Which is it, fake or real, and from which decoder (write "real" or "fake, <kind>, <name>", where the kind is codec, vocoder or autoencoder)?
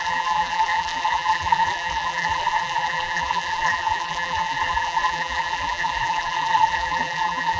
fake, vocoder, BigVGAN v2